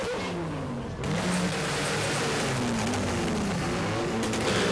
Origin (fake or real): real